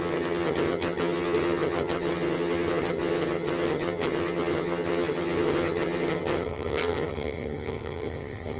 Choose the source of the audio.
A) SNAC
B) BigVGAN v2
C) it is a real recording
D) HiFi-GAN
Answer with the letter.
D